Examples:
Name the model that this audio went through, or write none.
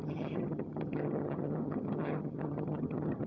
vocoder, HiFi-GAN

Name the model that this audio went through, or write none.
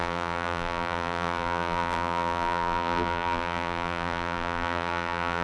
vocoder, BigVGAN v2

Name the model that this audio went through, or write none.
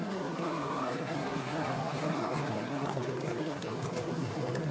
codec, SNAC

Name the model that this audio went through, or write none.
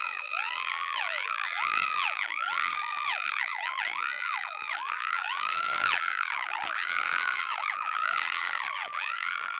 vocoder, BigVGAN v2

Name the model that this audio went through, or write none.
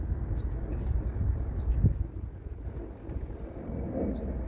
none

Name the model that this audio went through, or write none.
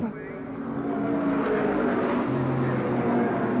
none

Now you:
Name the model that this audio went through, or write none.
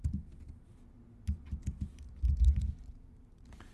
none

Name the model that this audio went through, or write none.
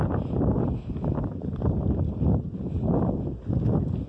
none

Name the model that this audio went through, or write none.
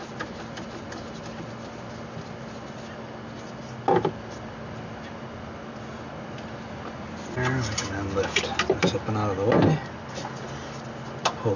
none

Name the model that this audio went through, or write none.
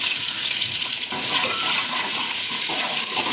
vocoder, Vocos